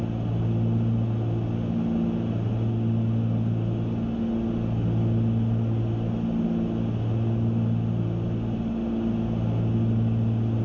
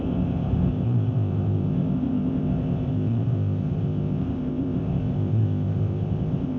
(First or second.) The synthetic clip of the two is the second